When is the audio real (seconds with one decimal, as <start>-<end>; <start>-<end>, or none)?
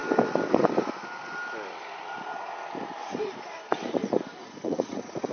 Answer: 0.0-3.0